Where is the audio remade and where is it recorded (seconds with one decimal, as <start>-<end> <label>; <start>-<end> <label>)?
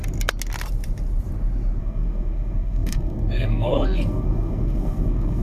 0.0-1.8 recorded; 1.8-5.4 remade